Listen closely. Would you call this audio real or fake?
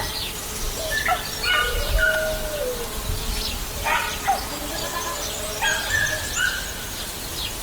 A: real